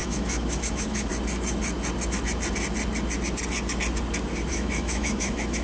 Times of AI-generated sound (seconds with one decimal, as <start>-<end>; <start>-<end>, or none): 0.0-1.1; 4.5-5.6